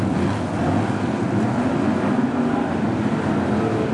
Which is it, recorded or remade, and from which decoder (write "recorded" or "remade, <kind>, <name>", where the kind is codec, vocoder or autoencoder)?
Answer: recorded